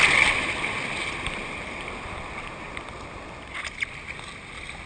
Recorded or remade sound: recorded